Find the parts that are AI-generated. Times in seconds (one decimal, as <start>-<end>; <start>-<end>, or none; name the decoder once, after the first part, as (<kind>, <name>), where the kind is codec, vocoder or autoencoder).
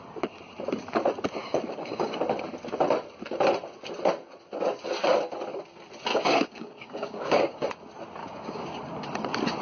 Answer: 1.4-2.2 (codec, DAC); 6.1-7.7; 8.2-8.8